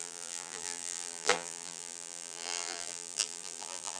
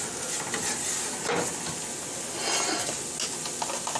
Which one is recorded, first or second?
second